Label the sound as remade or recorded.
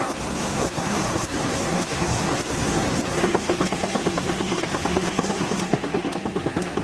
remade